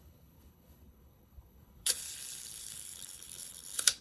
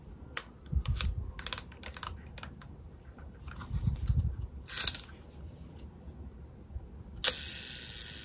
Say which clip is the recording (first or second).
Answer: second